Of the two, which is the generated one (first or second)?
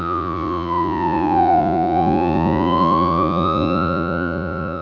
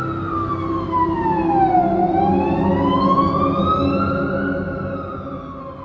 first